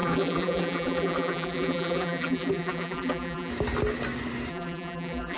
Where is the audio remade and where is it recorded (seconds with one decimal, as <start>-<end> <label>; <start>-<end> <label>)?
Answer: 0.0-3.5 remade; 3.5-4.5 recorded; 4.5-5.4 remade